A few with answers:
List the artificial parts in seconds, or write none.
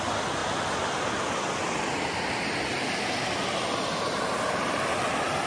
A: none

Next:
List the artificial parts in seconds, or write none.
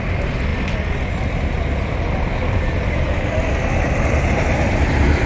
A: none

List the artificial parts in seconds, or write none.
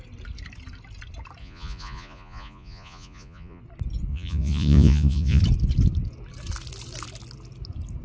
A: 1.4-3.6 (vocoder, Vocos); 4.1-5.4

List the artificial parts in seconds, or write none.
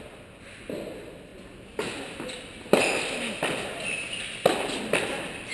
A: none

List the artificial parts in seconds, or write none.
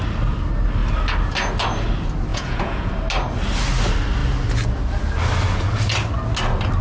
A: 2.3-2.9 (vocoder, Vocos)